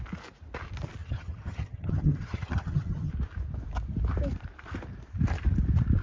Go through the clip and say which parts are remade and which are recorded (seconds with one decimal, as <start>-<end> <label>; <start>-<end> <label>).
0.0-1.0 recorded; 1.0-3.1 remade; 3.1-6.0 recorded

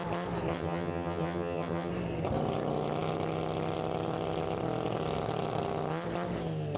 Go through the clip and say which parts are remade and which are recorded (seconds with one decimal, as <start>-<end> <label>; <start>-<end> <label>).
0.0-0.5 recorded; 0.5-1.9 remade; 1.9-6.8 recorded

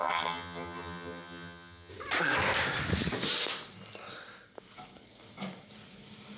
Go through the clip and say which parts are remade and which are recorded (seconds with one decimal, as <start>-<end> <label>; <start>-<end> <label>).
0.0-1.9 remade; 1.9-6.4 recorded

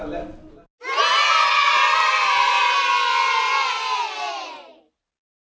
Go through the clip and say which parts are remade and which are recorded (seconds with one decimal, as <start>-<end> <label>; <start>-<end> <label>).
0.0-5.6 recorded

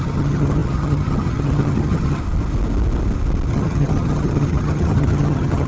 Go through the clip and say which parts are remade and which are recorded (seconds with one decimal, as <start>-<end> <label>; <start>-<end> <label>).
0.0-2.2 remade; 2.2-3.5 recorded; 3.5-5.7 remade

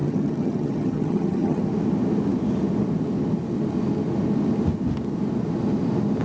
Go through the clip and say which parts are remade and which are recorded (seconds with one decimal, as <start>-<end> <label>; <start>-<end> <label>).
0.0-1.6 remade; 1.6-6.2 recorded